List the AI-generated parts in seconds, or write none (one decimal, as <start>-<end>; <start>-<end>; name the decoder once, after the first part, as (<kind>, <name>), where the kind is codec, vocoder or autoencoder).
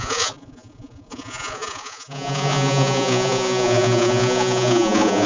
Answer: 0.0-5.3 (vocoder, Vocos)